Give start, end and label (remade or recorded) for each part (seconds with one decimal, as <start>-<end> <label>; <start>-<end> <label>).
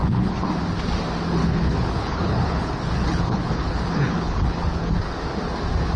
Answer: 0.0-0.5 remade; 0.5-1.4 recorded; 1.4-5.0 remade; 5.0-6.0 recorded